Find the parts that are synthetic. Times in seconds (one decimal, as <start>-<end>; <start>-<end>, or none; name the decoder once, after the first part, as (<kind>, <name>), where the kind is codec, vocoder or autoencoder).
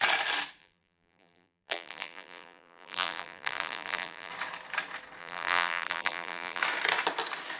0.6-4.3 (vocoder, BigVGAN v2); 5.2-6.6